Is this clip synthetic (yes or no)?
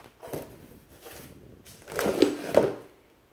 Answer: no